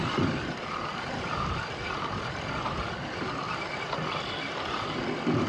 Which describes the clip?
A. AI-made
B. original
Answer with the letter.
B